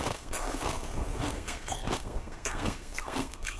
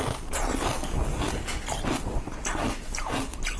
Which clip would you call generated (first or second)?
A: first